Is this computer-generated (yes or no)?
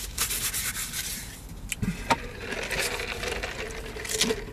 no